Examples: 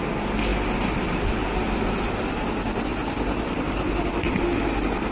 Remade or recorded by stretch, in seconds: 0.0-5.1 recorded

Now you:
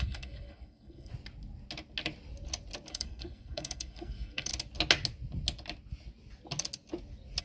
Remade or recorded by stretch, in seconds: 0.0-1.1 remade; 1.1-2.9 recorded; 2.9-4.5 remade; 4.5-7.4 recorded

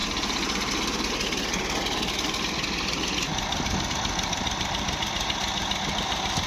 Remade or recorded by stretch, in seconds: 0.0-6.5 recorded

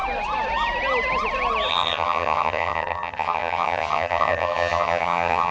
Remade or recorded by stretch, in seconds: 0.0-1.7 recorded; 1.7-5.5 remade